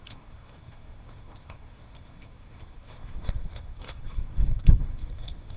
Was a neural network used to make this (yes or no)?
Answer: yes